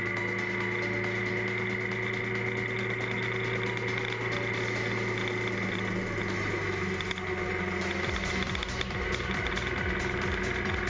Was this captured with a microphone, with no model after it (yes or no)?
yes